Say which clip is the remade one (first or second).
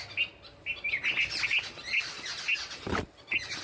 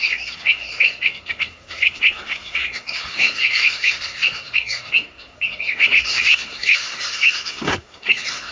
second